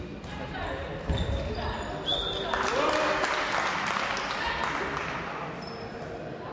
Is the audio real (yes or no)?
yes